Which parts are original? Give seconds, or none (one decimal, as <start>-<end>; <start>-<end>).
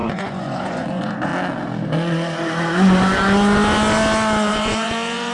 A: 1.3-4.5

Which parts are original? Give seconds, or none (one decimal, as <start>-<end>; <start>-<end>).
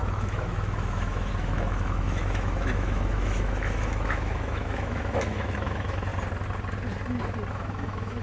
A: 6.1-7.5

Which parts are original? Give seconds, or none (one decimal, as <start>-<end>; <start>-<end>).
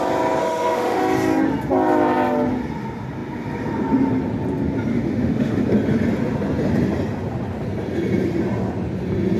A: 0.0-0.4; 1.0-4.9; 5.6-9.4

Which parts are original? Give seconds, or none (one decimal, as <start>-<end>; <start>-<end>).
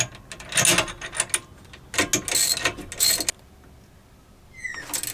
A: 0.0-5.1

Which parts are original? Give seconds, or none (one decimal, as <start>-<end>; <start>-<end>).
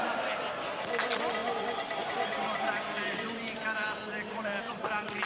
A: 0.0-5.3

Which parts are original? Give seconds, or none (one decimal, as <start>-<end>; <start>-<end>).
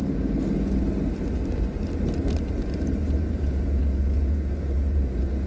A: 0.0-3.3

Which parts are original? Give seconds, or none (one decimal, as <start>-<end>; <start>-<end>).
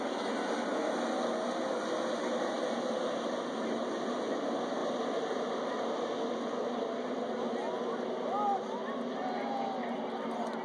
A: 0.0-10.6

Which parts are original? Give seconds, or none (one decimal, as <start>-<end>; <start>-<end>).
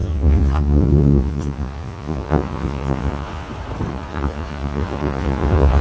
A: 3.5-3.9